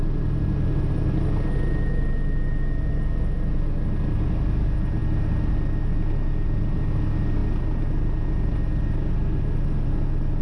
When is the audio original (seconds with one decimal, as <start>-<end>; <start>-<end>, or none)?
0.0-10.4